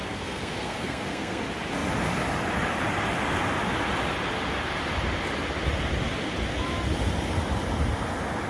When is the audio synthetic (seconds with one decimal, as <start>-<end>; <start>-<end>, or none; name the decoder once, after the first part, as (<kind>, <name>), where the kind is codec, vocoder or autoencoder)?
0.0-1.4 (codec, SNAC)